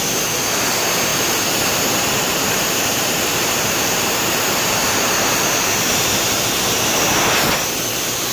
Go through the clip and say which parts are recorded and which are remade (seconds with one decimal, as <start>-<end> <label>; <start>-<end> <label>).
0.0-1.1 recorded; 1.1-5.7 remade; 5.7-8.3 recorded